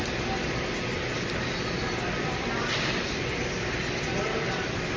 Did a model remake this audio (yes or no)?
yes